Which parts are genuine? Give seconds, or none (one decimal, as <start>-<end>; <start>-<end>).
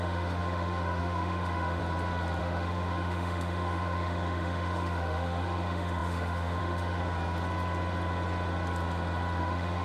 1.8-2.4; 7.0-9.4